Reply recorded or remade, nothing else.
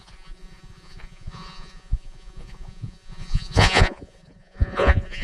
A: remade